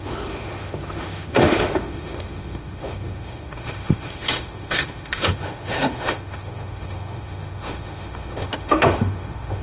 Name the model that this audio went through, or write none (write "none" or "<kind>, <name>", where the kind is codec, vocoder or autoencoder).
autoencoder, DAC-VAE